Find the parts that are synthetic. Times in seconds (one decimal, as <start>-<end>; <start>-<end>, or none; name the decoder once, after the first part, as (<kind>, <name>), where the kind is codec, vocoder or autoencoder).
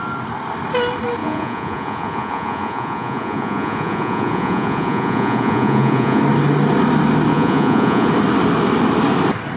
1.2-6.2 (vocoder, Vocos); 7.3-8.1